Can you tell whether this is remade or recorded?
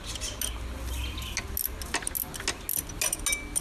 recorded